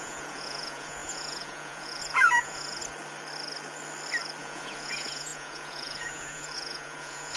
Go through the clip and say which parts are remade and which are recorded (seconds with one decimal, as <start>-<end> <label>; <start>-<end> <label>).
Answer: 0.0-2.8 remade; 2.8-4.4 recorded; 4.4-7.4 remade